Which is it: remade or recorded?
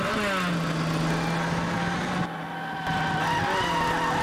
recorded